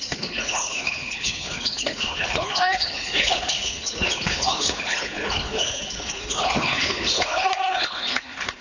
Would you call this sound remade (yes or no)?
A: yes